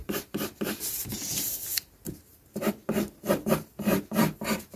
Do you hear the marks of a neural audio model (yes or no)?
yes